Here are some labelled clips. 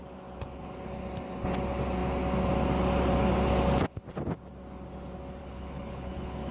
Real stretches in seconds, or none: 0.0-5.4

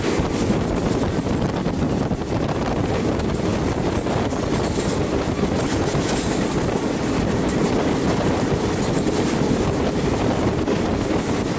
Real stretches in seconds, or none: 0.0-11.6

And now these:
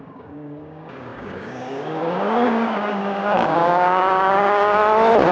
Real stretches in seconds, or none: 4.8-5.3